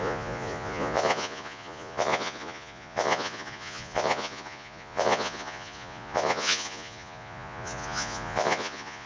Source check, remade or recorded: remade